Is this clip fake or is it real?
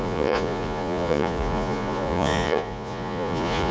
fake